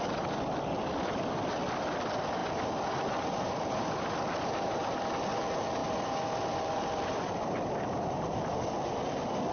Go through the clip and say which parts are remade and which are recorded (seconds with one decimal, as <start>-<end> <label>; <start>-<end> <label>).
0.0-9.5 recorded